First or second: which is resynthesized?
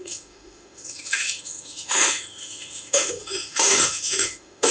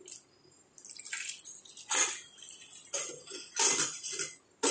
first